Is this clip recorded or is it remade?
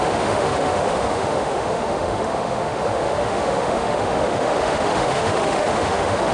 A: remade